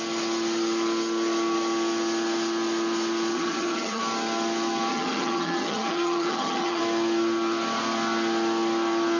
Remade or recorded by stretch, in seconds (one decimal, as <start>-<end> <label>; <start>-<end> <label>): 0.0-3.3 recorded; 3.3-4.0 remade; 4.0-4.9 recorded; 4.9-6.8 remade; 6.8-9.2 recorded